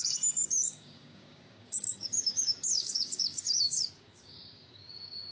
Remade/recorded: remade